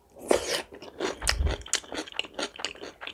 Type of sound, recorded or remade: recorded